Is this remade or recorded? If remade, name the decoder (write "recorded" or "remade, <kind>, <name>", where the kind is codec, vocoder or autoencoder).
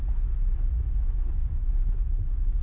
recorded